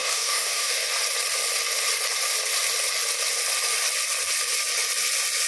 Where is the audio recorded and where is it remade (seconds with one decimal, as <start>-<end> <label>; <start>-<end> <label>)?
0.0-0.9 remade; 0.9-5.5 recorded